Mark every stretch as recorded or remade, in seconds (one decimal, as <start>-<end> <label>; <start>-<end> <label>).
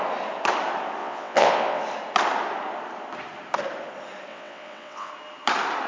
0.0-1.0 recorded; 1.0-1.8 remade; 1.8-4.3 recorded; 4.3-5.1 remade; 5.1-5.9 recorded